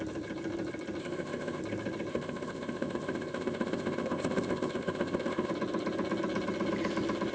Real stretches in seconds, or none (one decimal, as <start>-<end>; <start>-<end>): 0.0-1.0; 1.6-2.1; 5.5-7.3